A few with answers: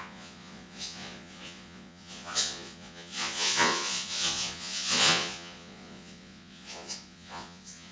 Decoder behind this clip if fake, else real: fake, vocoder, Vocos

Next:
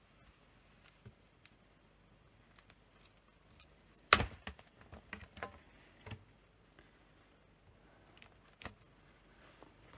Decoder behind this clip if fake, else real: real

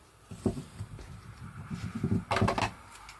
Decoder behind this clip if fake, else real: real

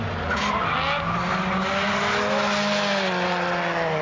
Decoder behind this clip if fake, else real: real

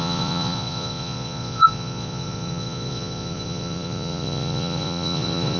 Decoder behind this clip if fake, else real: fake, vocoder, Vocos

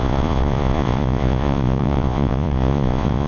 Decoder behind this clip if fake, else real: fake, vocoder, Vocos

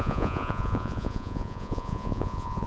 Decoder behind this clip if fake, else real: fake, vocoder, Vocos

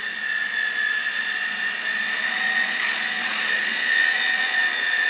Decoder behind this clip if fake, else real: fake, vocoder, Vocos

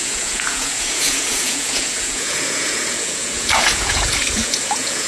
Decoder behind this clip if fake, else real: fake, vocoder, Vocos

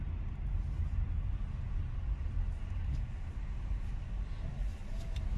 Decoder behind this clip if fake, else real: real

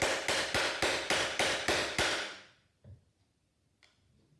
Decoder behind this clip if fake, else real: real